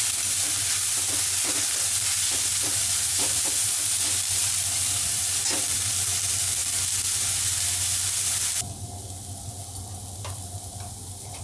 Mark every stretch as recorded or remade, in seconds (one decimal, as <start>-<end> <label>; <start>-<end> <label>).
0.0-6.6 remade; 6.6-10.2 recorded; 10.2-11.4 remade